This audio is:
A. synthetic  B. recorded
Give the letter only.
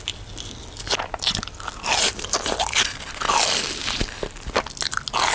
B